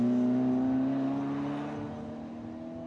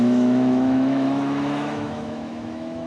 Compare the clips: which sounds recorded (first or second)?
first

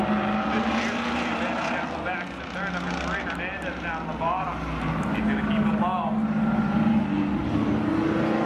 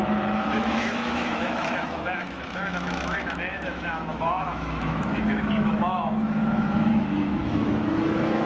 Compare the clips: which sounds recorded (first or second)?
first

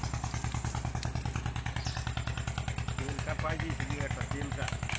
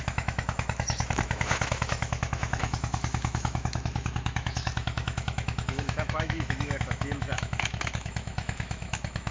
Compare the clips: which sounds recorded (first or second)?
first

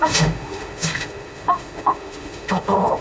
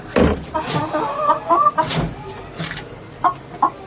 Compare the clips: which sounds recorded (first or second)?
second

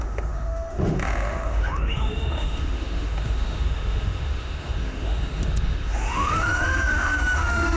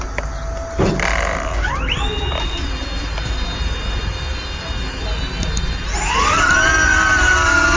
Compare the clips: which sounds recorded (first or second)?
second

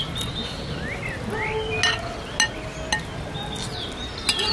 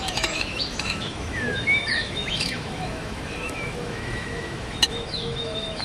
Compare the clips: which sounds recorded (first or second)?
first